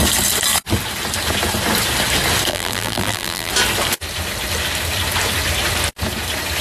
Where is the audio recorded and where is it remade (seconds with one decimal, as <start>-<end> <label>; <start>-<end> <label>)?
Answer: 0.0-2.5 recorded; 2.5-3.5 remade; 3.5-6.6 recorded